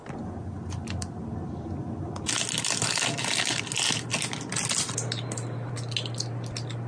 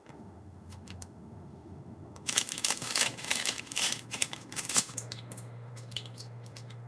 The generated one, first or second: second